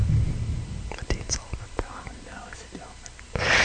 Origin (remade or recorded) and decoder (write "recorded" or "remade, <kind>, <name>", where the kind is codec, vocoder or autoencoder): recorded